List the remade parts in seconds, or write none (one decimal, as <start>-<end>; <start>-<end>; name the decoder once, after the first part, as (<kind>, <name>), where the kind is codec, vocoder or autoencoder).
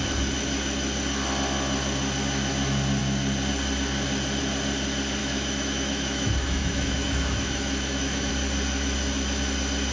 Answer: 5.2-8.3 (autoencoder, DAC-VAE)